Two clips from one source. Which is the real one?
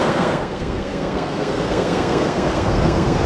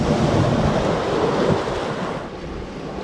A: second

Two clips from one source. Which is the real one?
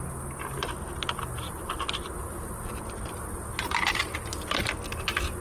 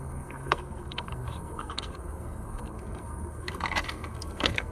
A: first